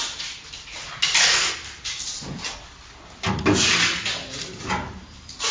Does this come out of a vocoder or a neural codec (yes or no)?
no